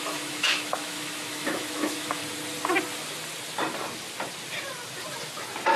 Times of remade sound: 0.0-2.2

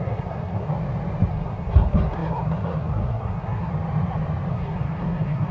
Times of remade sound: 0.0-0.7; 1.3-3.7; 4.5-5.5

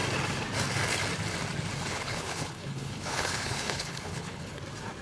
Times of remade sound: 1.9-4.6

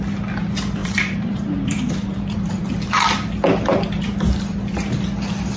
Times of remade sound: 0.8-2.6

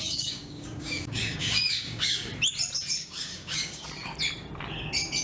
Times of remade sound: 0.0-2.3; 3.0-3.8

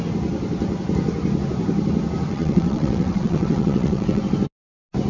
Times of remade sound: 2.3-4.2

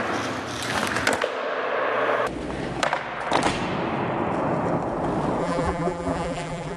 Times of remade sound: 5.4-6.8

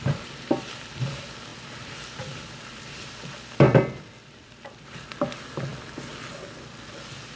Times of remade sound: 0.0-7.4